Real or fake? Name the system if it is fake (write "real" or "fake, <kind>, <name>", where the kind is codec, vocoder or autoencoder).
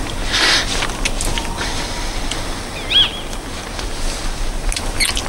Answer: real